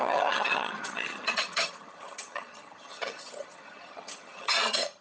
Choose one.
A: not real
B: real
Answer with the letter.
A